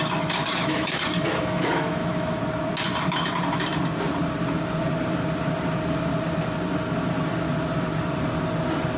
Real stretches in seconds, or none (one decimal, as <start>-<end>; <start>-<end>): 0.0-0.4; 2.4-9.0